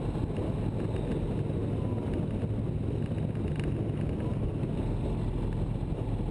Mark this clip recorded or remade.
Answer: recorded